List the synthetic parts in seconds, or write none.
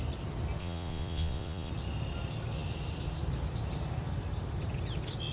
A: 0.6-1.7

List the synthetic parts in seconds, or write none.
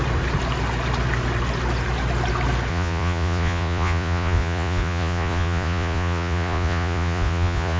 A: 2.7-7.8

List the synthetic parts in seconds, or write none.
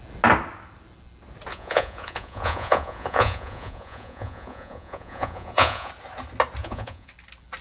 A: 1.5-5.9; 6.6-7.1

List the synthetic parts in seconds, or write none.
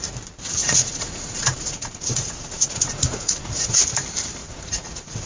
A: 0.6-3.8; 4.4-5.3